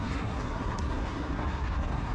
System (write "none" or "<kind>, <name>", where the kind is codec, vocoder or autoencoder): codec, SNAC